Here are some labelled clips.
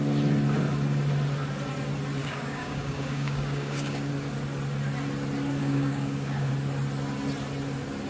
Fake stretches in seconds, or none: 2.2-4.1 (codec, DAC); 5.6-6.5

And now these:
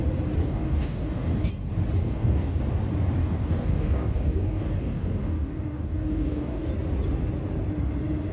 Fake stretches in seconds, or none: 0.4-1.5 (codec, DAC); 2.0-2.6; 3.2-6.7

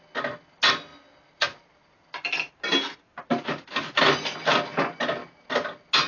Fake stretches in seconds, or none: none